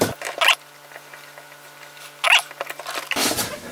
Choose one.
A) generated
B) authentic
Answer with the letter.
B